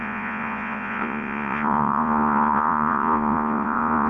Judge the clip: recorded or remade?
remade